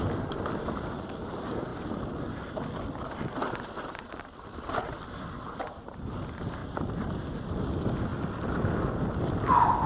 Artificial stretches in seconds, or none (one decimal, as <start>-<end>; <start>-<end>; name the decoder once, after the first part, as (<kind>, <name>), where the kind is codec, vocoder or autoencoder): 6.6-7.1 (vocoder, BigVGAN v2)